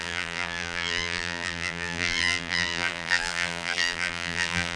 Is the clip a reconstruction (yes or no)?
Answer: yes